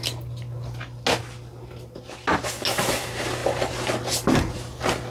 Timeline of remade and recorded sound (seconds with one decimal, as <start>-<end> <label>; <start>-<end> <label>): 0.0-5.1 recorded